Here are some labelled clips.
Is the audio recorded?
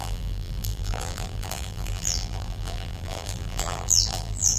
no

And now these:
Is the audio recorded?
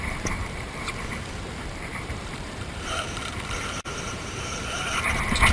no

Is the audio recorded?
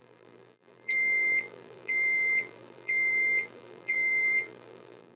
no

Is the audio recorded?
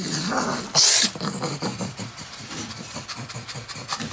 no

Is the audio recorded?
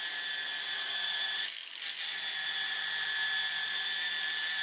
yes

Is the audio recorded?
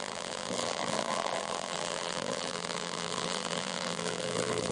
no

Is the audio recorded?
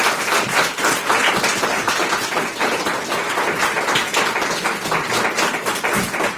yes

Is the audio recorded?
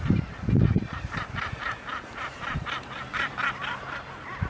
no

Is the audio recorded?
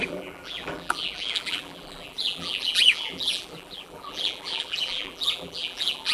no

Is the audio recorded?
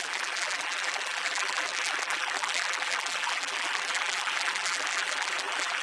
no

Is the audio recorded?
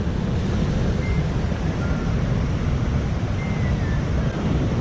yes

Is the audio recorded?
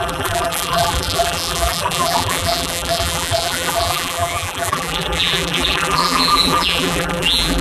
no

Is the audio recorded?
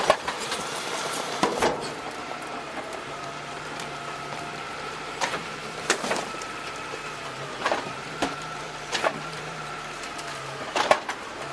no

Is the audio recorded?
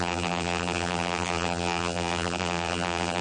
no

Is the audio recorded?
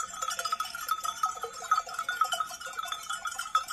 no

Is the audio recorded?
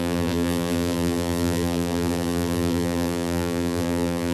no